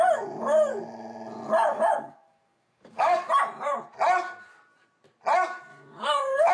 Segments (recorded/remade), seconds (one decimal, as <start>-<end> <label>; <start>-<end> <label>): 0.0-1.7 recorded; 1.7-3.2 remade; 3.2-5.7 recorded; 5.7-6.5 remade